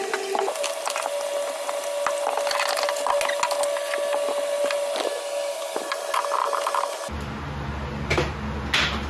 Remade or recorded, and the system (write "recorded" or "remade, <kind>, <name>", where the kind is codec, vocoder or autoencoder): recorded